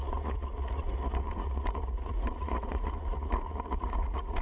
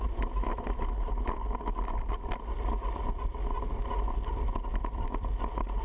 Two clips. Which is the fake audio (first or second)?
first